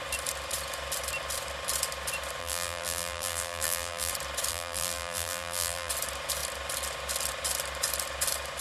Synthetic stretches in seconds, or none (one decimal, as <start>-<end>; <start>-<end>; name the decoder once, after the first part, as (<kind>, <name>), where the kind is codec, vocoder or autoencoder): 2.4-4.1 (vocoder, BigVGAN v2); 4.5-5.9